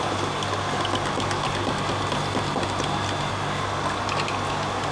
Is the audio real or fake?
real